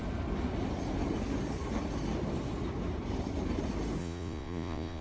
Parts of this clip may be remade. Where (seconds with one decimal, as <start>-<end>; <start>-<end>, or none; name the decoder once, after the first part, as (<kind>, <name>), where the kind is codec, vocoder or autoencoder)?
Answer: 4.0-5.0 (vocoder, Vocos)